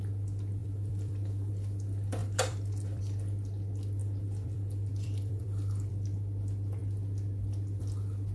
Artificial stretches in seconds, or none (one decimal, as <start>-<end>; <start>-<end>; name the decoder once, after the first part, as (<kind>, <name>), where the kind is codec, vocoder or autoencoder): 0.6-1.5 (vocoder, BigVGAN v2); 2.2-3.0; 4.0-5.9